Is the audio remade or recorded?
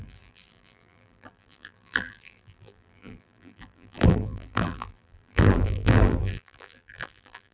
remade